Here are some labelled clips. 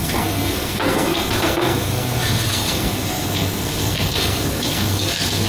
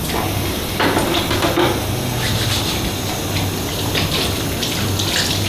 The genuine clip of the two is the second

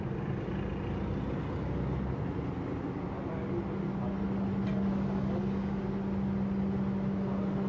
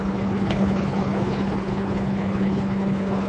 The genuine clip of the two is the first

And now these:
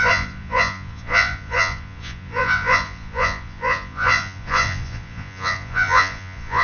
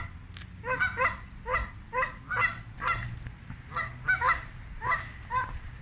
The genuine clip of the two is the second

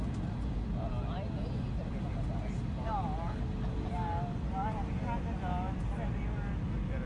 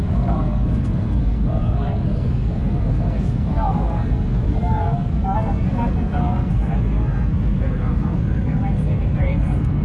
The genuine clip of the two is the first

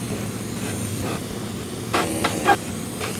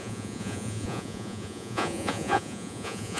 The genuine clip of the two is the first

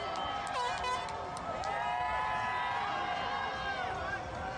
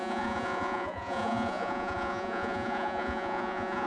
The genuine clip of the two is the first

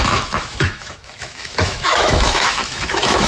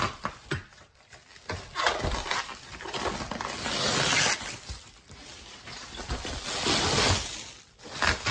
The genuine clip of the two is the second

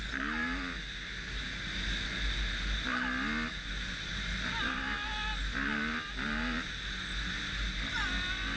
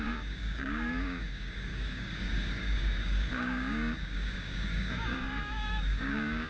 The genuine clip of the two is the first